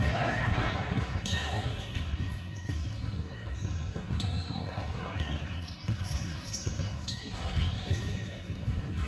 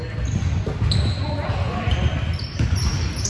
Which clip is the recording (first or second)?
second